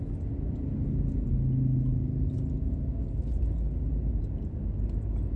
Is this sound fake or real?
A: real